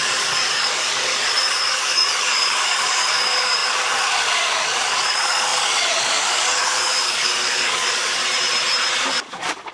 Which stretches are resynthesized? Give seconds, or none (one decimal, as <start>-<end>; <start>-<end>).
0.0-8.2; 9.0-9.7